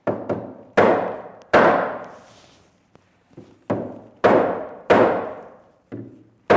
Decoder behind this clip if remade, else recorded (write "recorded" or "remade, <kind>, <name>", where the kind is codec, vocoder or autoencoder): recorded